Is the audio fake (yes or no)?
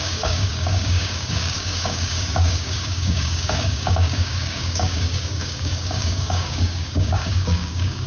yes